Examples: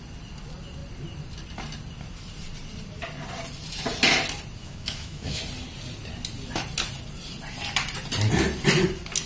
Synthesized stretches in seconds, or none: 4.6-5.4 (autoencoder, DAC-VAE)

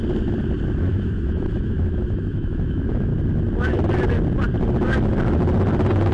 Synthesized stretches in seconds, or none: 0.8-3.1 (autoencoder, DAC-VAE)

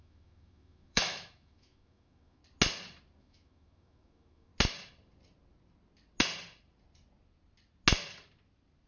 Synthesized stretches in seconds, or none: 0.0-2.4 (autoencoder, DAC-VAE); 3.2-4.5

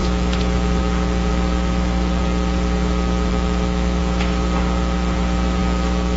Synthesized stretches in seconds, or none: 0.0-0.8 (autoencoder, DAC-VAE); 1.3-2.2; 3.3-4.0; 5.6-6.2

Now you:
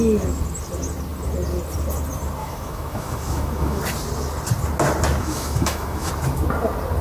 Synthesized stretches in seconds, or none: 2.4-3.8 (autoencoder, DAC-VAE); 5.2-6.1